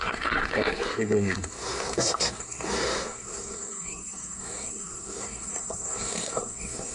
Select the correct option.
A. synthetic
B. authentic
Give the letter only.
A